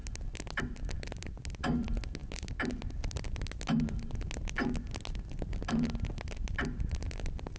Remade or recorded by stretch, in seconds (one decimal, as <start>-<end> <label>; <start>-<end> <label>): 0.0-7.6 recorded